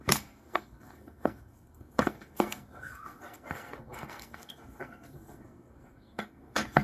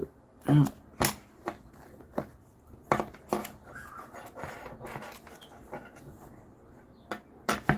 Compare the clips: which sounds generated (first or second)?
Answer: first